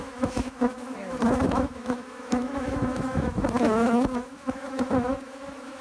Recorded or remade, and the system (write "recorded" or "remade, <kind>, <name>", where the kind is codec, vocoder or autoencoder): remade, autoencoder, DAC-VAE